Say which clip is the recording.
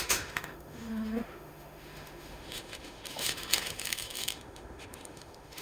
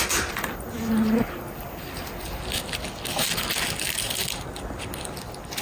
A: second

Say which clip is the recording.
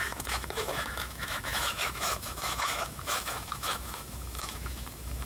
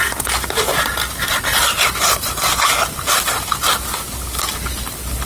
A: second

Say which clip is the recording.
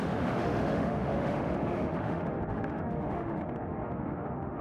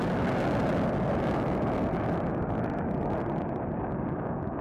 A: second